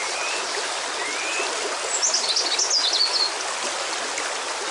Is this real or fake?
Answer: real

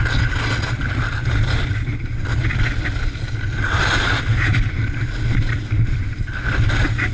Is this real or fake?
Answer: real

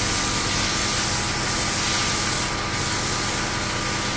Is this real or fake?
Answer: real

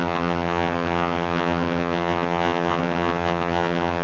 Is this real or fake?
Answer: fake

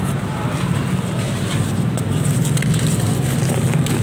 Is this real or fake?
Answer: real